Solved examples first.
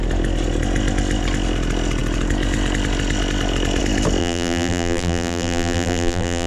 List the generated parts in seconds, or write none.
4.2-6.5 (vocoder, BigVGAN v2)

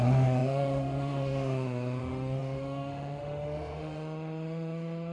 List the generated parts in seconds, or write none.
0.0-5.1 (autoencoder, DAC-VAE)